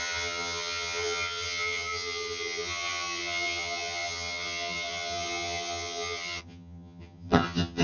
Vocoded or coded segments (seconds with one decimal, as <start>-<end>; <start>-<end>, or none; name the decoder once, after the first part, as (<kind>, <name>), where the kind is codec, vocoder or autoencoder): 0.0-7.8 (vocoder, HiFi-GAN)